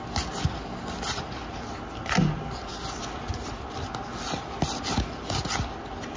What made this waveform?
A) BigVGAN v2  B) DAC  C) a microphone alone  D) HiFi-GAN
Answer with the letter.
C